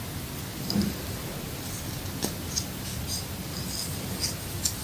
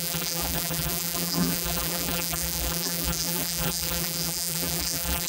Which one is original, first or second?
first